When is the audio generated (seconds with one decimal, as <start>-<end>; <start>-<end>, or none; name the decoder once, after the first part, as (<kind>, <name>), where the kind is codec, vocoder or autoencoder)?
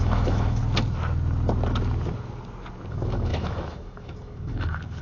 0.0-0.6 (autoencoder, DAC-VAE); 2.9-5.0